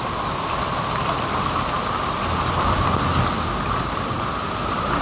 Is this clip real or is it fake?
real